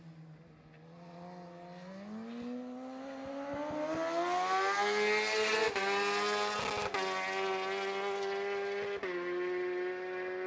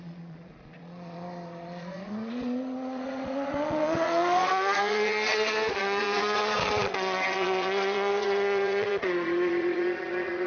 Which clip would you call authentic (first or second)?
first